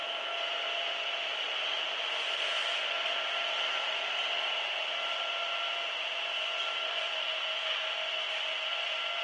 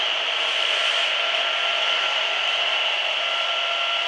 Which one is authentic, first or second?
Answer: second